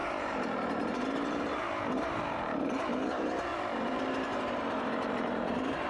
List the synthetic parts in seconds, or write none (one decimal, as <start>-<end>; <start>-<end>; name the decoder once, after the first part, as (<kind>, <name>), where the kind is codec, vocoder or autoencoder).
0.0-5.9 (vocoder, BigVGAN v2)